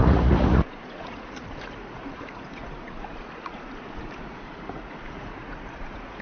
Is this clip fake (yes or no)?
yes